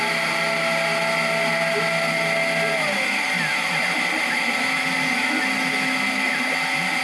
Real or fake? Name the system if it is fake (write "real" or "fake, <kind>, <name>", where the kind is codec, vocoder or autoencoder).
real